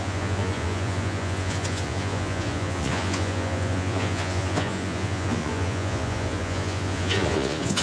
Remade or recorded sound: remade